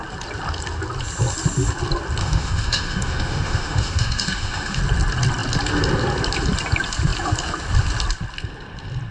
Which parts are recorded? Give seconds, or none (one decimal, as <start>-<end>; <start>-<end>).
0.0-2.2; 4.8-9.1

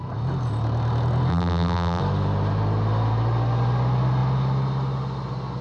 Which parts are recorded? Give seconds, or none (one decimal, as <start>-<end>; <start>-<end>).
0.0-1.3; 2.0-5.6

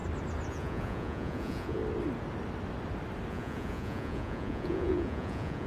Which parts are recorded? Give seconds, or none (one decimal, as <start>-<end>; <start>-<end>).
0.0-0.5; 1.8-3.3

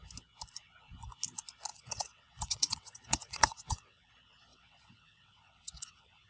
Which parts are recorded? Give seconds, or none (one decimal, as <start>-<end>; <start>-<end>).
0.0-1.7; 4.1-4.5

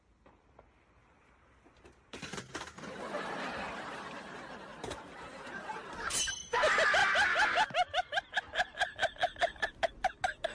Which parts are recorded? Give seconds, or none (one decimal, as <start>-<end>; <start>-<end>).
0.0-1.0; 4.2-4.7; 6.6-10.5

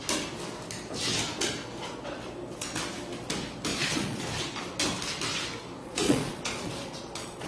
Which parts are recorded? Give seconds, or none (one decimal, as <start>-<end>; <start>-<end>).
0.0-3.7; 4.2-5.8